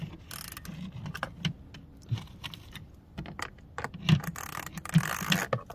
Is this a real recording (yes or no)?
yes